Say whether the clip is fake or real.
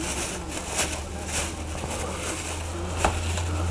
real